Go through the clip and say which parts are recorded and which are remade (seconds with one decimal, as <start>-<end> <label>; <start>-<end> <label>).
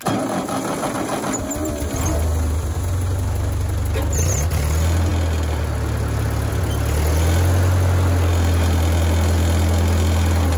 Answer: 0.0-10.6 recorded